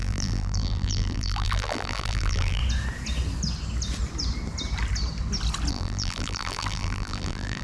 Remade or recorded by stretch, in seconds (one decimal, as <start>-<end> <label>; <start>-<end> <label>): 0.0-2.6 remade; 2.6-5.7 recorded; 5.7-7.6 remade